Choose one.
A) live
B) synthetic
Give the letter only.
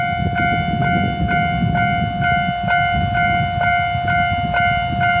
A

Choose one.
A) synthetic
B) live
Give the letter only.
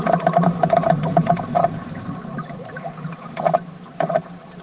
A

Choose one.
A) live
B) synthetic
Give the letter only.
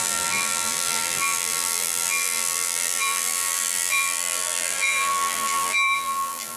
B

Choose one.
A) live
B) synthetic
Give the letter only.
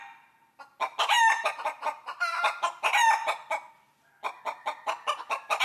A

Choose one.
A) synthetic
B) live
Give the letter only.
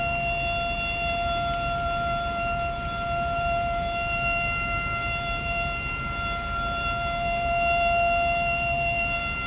A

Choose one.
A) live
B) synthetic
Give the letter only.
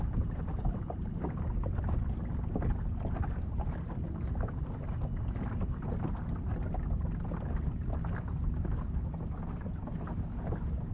A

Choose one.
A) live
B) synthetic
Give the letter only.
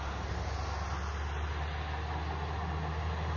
A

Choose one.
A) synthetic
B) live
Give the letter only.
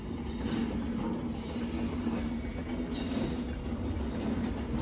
B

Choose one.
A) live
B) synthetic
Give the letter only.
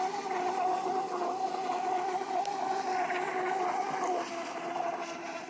A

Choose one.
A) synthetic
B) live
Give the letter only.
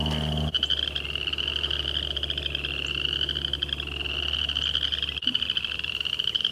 B